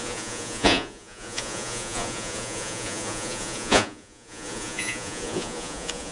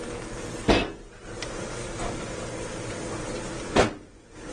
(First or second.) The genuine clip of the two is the second